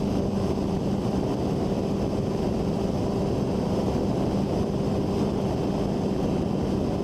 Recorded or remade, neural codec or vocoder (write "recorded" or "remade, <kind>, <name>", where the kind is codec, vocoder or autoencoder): recorded